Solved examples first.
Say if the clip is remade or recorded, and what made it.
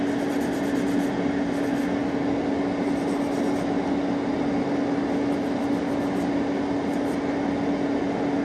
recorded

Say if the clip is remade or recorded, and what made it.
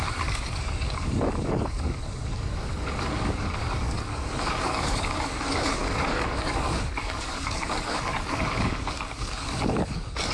remade, codec, DAC